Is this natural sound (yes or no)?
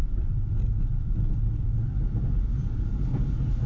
yes